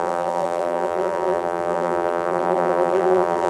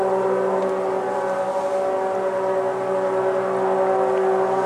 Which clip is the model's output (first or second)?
first